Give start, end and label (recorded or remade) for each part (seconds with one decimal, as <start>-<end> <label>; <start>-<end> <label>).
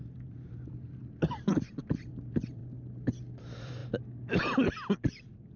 0.0-1.0 remade; 1.0-1.8 recorded; 1.8-2.6 remade; 2.6-3.4 recorded; 3.4-3.8 remade; 3.8-5.0 recorded; 5.0-5.6 remade